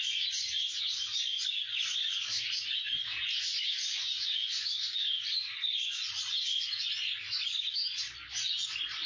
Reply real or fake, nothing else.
real